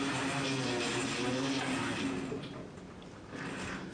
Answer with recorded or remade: recorded